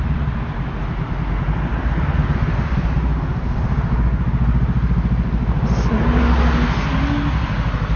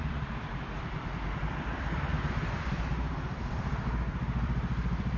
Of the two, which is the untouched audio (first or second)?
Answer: first